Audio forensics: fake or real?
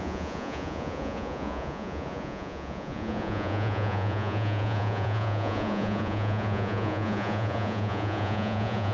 fake